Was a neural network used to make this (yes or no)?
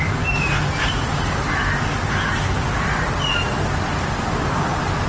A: no